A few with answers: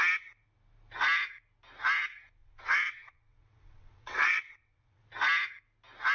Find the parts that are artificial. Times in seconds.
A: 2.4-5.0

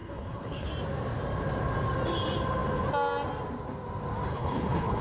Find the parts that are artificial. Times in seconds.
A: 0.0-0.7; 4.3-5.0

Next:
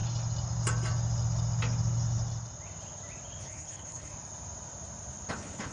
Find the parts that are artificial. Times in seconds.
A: 3.4-4.1; 5.3-5.7